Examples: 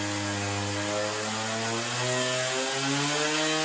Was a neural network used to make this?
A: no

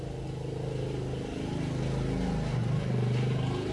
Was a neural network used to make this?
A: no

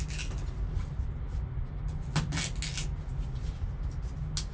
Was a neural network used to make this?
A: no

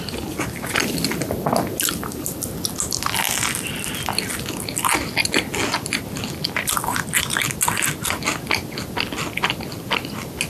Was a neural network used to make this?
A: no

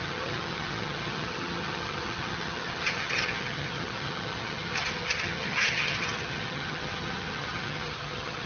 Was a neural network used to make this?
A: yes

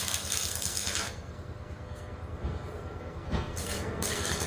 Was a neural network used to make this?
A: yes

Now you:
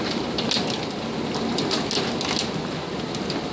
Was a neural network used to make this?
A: no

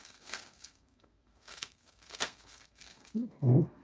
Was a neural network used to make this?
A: yes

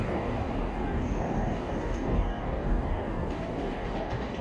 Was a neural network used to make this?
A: yes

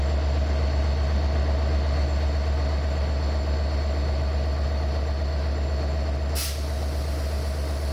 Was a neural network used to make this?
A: no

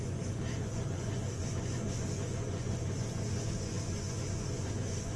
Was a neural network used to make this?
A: yes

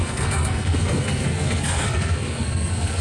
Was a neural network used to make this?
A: yes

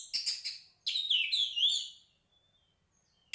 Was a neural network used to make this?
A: no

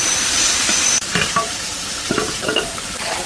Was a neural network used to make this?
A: yes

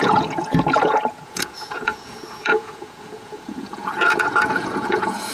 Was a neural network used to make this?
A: yes